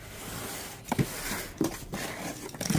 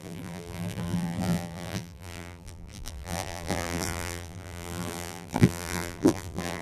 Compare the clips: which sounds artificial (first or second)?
second